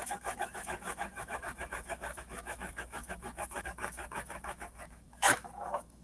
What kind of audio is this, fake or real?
fake